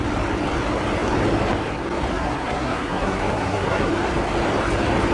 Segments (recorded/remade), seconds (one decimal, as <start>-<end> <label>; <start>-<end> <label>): 0.0-2.1 recorded; 2.1-3.9 remade; 3.9-5.1 recorded